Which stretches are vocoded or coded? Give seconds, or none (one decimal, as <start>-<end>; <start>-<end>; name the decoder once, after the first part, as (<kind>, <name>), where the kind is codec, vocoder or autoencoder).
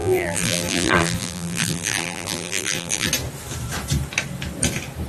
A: 0.0-3.1 (vocoder, BigVGAN v2)